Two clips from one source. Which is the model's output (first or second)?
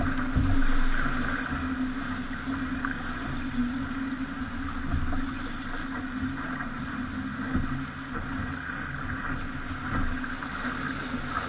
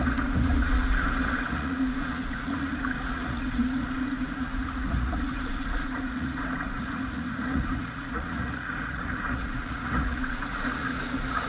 second